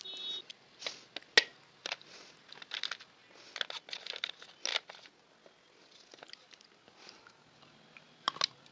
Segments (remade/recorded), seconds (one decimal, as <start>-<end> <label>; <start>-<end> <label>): 0.0-8.7 recorded

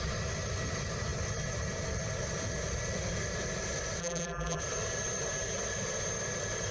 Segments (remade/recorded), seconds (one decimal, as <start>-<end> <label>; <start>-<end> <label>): 0.0-4.0 recorded; 4.0-4.6 remade; 4.6-6.7 recorded

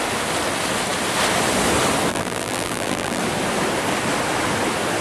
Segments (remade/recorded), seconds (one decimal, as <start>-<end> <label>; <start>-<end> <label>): 0.0-2.1 recorded; 2.1-3.2 remade; 3.2-5.0 recorded

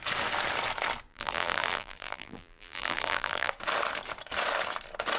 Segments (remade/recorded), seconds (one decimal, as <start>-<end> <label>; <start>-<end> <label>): 0.0-1.1 recorded; 1.1-3.5 remade; 3.5-5.2 recorded

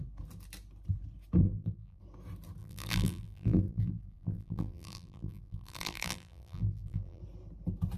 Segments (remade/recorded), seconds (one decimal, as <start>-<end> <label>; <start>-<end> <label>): 0.0-1.4 recorded; 1.4-2.0 remade; 2.0-2.6 recorded; 2.6-7.2 remade; 7.2-8.0 recorded

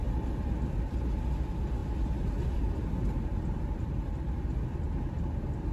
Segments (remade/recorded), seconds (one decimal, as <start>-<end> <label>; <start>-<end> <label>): 0.0-5.7 recorded